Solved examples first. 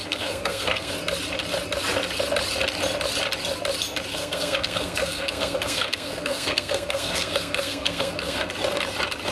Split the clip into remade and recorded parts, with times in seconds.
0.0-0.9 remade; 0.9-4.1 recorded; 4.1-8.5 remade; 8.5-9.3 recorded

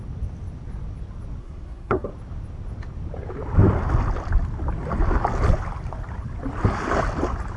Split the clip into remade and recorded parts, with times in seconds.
0.0-1.4 recorded; 1.4-2.1 remade; 2.1-7.6 recorded

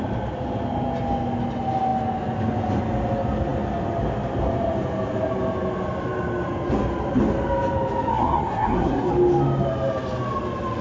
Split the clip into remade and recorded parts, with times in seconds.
0.0-8.1 recorded; 8.1-9.1 remade; 9.1-10.8 recorded

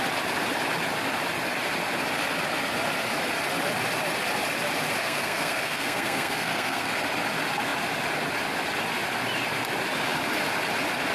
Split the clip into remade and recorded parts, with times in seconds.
0.0-5.0 recorded; 5.0-6.9 remade; 6.9-11.1 recorded

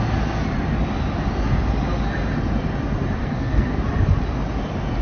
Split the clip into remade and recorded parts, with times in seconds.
0.0-3.2 recorded; 3.2-3.8 remade; 3.8-5.0 recorded

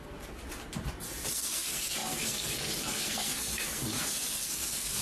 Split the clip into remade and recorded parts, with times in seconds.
0.0-0.4 remade; 0.4-1.3 recorded; 1.3-5.0 remade

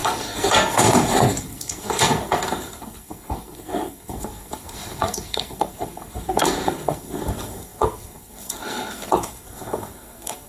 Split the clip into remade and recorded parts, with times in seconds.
0.0-10.5 remade